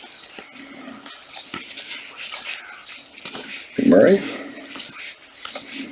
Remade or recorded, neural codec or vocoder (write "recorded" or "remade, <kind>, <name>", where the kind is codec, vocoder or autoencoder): recorded